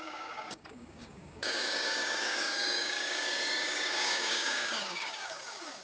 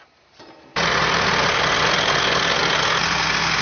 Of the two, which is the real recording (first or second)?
second